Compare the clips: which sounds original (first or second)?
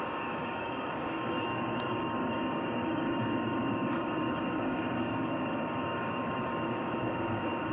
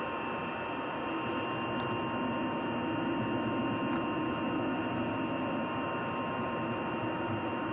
second